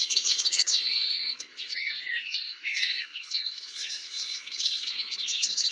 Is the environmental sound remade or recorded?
remade